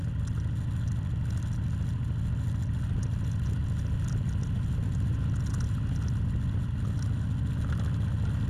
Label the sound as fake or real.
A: real